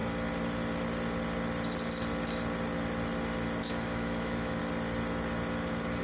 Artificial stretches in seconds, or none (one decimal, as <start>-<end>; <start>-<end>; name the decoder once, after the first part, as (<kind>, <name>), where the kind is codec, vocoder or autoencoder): 3.6-4.6 (autoencoder, DAC-VAE)